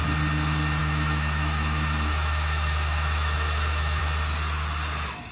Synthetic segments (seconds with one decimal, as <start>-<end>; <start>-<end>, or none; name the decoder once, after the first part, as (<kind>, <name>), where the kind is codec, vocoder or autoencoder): 0.8-4.0 (autoencoder, DAC-VAE)